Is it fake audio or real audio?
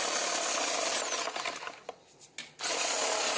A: real